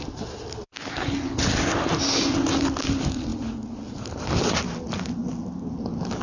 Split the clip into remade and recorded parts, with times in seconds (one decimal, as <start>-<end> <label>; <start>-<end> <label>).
0.0-6.2 recorded